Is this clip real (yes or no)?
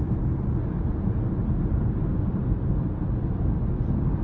yes